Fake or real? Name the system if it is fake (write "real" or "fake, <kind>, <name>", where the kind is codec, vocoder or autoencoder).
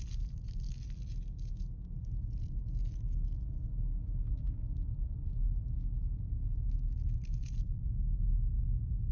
real